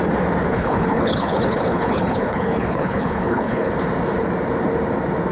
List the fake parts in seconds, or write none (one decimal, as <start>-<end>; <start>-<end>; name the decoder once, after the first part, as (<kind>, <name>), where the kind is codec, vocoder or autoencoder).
0.5-3.7 (codec, HILCodec)